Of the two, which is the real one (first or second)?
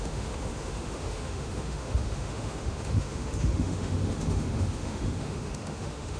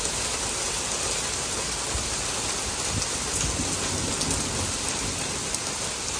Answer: second